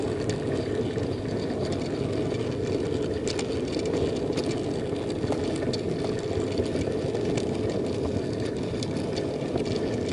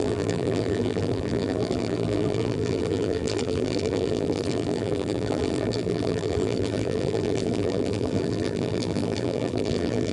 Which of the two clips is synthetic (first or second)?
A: second